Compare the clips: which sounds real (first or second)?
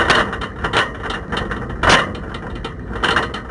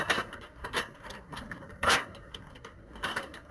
first